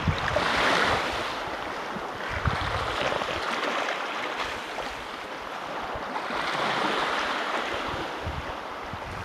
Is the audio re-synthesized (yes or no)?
no